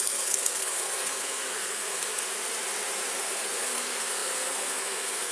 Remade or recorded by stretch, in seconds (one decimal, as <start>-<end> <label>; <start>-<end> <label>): 0.0-2.1 remade; 2.1-3.2 recorded; 3.2-5.3 remade